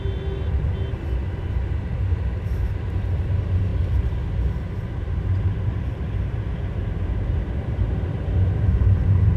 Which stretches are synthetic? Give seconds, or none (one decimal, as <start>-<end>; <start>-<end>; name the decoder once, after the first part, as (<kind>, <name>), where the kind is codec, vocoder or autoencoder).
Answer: none